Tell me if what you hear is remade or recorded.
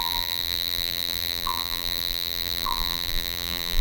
remade